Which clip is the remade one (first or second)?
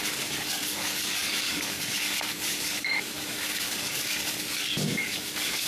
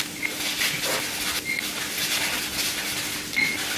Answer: first